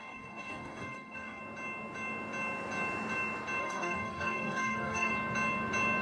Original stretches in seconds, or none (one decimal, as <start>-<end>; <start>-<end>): 1.4-3.6; 5.1-6.0